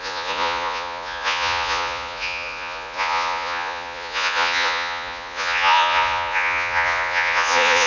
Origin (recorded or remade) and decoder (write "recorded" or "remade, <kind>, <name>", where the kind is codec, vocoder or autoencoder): remade, vocoder, Vocos